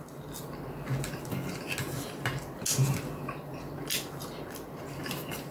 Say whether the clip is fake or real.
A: real